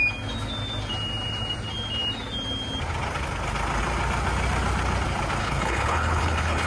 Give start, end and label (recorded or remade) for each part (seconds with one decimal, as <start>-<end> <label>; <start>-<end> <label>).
0.0-5.4 recorded; 5.4-6.7 remade